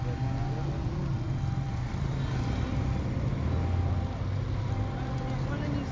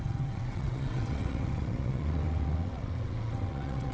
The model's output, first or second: second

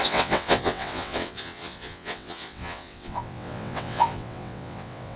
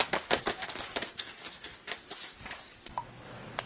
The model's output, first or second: first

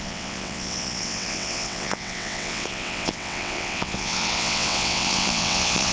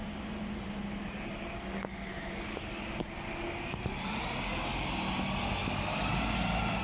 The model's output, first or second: first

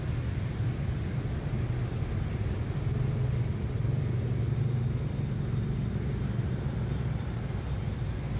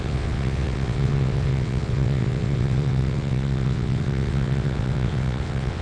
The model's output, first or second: second